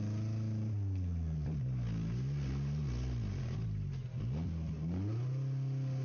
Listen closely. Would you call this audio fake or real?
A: real